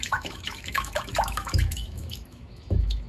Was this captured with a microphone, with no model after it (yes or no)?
no